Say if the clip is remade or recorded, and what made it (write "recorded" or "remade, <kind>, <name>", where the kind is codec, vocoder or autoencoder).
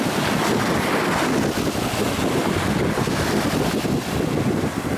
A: recorded